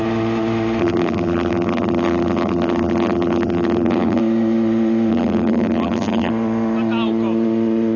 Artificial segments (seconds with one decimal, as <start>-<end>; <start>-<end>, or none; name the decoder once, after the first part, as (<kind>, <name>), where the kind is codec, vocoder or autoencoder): 0.8-4.2 (vocoder, BigVGAN v2); 5.1-6.3